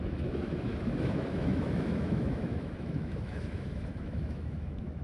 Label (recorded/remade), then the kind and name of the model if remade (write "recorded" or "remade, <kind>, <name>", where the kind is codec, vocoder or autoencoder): remade, autoencoder, DAC-VAE